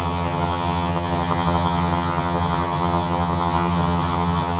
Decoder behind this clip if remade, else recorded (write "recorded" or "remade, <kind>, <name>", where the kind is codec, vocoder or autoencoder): remade, vocoder, HiFi-GAN